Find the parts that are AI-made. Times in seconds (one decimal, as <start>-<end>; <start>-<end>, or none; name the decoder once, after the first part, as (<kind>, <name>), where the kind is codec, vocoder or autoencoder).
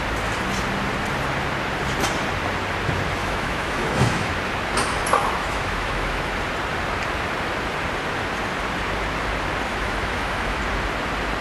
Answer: 3.2-4.3 (autoencoder, DAC-VAE); 5.2-6.3; 9.7-10.6